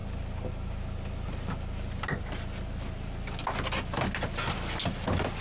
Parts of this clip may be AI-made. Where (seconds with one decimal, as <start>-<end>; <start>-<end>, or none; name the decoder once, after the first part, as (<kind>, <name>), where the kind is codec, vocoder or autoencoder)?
none